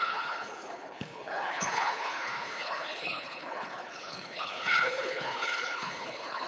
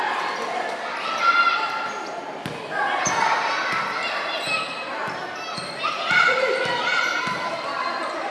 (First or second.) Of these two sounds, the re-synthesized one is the first